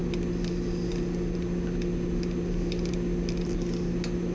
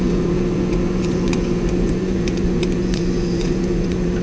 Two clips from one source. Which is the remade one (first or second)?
second